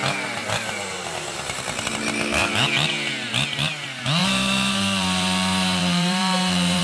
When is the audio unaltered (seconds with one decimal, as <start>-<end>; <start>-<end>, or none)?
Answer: 0.0-0.4; 1.6-4.2